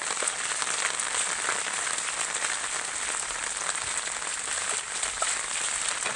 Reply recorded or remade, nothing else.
recorded